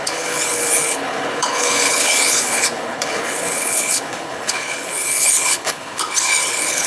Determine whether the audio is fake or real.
fake